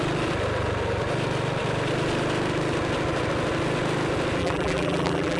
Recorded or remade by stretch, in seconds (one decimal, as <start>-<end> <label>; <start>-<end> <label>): 0.0-4.4 recorded; 4.4-5.4 remade